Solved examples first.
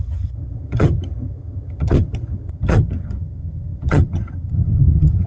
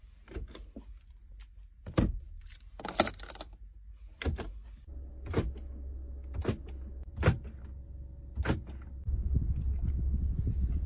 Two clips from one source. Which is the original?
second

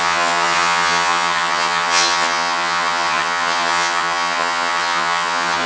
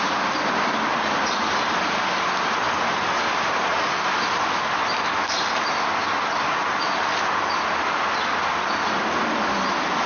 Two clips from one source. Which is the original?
second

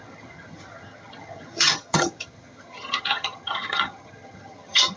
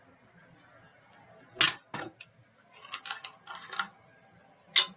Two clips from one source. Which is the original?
second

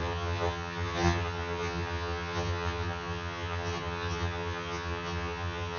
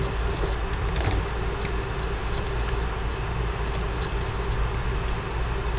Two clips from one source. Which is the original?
second